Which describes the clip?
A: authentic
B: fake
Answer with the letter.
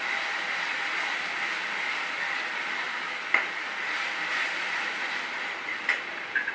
A